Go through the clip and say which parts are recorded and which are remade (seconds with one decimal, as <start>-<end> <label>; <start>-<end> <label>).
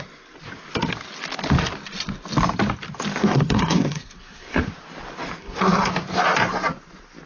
0.0-3.2 recorded; 3.2-4.7 remade; 4.7-5.4 recorded; 5.4-5.9 remade; 5.9-7.3 recorded